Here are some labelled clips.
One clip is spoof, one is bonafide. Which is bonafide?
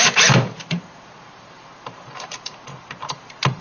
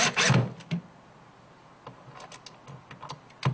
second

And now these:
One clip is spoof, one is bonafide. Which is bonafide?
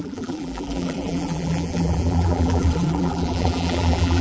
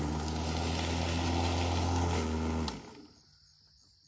second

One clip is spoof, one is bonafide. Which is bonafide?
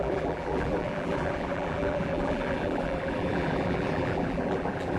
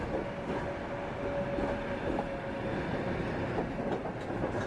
second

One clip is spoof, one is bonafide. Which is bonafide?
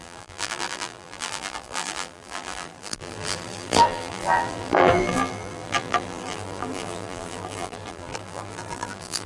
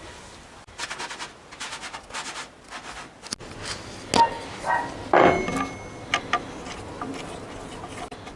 second